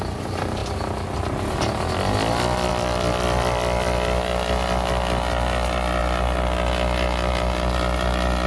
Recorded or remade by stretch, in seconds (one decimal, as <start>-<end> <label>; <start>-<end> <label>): 0.0-8.5 recorded